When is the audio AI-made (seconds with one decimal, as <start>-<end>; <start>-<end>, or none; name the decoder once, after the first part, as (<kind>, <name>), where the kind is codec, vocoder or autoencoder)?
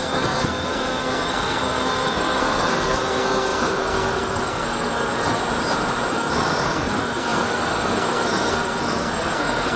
0.0-5.4 (codec, SNAC); 6.1-9.8